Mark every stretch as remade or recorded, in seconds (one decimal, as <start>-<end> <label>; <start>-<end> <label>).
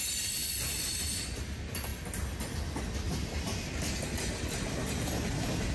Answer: 0.0-5.7 recorded